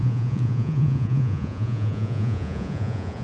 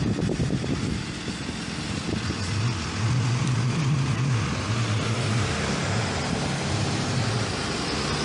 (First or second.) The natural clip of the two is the second